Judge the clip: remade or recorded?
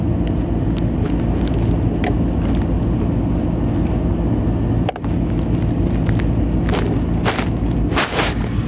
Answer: recorded